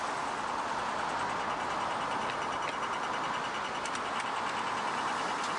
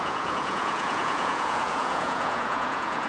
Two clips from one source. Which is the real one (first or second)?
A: first